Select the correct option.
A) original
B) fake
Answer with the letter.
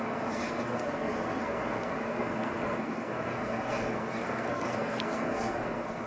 B